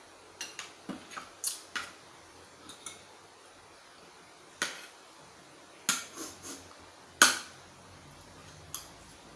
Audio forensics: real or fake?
real